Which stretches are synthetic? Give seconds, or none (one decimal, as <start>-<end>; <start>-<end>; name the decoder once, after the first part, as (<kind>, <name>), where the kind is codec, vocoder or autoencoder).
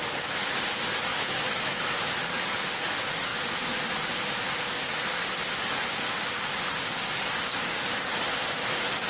1.1-2.1 (autoencoder, DAC-VAE)